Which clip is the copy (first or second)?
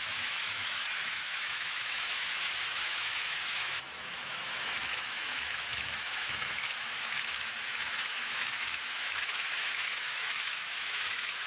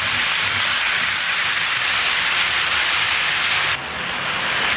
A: first